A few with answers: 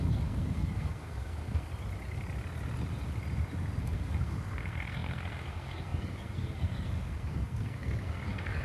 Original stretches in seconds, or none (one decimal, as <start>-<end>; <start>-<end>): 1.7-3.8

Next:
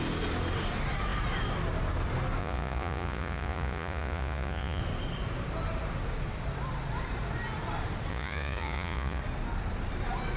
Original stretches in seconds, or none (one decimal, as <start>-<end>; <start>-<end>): 0.0-2.4; 4.8-8.1; 9.2-10.4

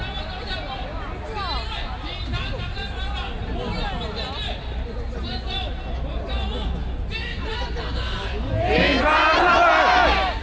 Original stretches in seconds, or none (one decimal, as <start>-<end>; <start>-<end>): 0.0-10.4

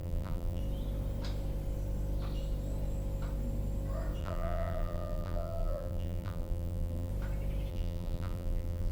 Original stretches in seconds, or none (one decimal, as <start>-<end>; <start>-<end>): 0.6-4.2; 7.1-7.7

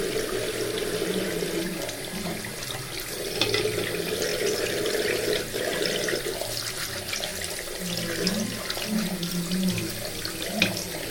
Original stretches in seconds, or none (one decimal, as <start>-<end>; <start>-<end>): 0.0-11.1